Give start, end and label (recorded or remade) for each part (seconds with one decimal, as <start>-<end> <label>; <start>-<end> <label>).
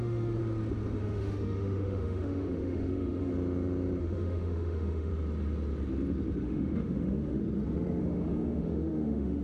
0.0-0.4 remade; 0.4-1.0 recorded; 1.0-3.3 remade; 3.3-4.0 recorded; 4.0-5.1 remade; 5.1-6.4 recorded; 6.4-7.4 remade; 7.4-8.0 recorded; 8.0-9.4 remade